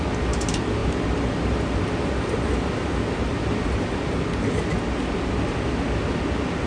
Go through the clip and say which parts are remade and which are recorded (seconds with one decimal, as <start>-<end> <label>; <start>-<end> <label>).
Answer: 0.0-6.7 recorded

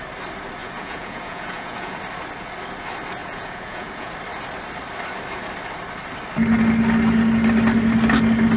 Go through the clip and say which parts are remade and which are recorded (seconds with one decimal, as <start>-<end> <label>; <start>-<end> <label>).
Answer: 0.0-0.6 recorded; 0.6-2.0 remade; 2.0-3.2 recorded; 3.2-4.1 remade; 4.1-8.6 recorded